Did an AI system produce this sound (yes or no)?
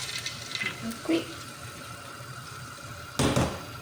no